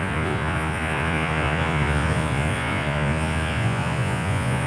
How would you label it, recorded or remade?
remade